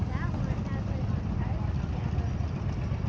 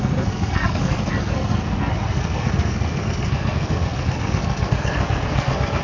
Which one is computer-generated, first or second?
second